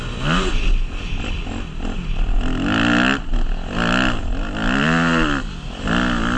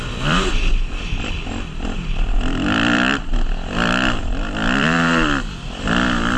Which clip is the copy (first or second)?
second